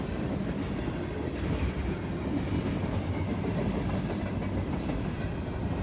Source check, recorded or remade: recorded